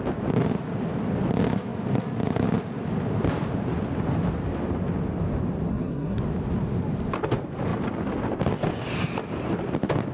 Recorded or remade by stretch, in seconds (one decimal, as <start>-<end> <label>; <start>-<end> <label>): 0.0-5.7 recorded; 5.7-6.2 remade; 6.2-10.1 recorded